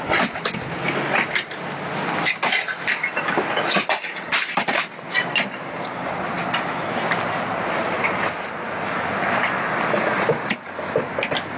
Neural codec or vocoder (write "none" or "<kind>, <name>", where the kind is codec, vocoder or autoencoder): none